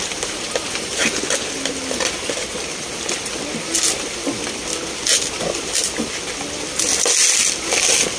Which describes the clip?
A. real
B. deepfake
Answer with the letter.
A